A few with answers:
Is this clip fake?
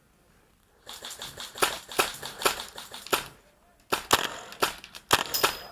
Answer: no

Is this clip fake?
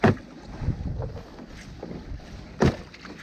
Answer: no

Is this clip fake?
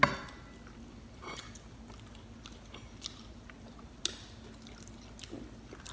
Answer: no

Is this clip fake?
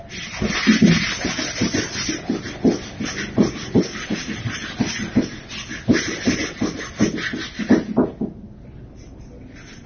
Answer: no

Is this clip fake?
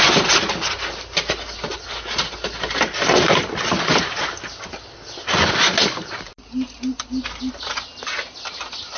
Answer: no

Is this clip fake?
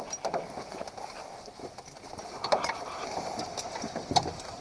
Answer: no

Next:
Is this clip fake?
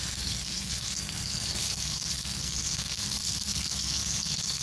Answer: yes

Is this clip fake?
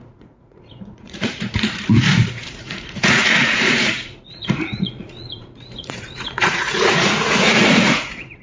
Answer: yes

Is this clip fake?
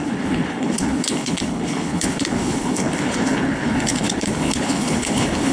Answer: yes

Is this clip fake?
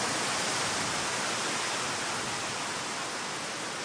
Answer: no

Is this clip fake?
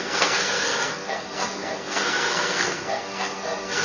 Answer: yes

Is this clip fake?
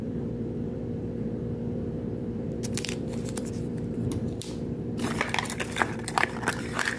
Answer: yes